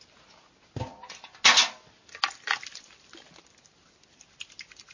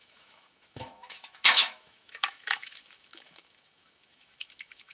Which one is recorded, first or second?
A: first